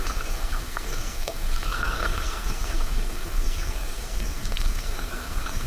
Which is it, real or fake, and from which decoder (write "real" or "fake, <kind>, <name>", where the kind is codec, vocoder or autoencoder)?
fake, codec, SNAC